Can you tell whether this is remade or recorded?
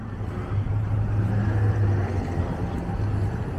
recorded